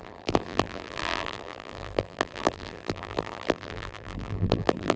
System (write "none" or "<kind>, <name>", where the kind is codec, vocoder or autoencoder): vocoder, BigVGAN v2